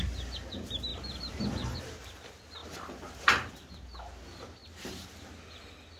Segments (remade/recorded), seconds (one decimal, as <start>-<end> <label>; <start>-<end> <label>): 0.0-6.0 recorded